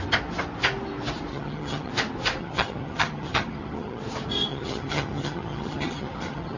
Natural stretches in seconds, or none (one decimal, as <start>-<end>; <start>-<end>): 0.0-1.3; 1.9-2.4; 4.0-4.5